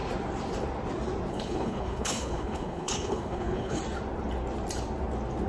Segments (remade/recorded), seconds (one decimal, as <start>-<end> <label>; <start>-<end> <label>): 0.0-1.3 recorded; 1.3-3.8 remade; 3.8-5.5 recorded